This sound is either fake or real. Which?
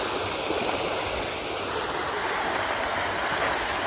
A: real